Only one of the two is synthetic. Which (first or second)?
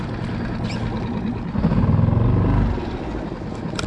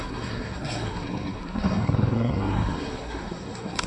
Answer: second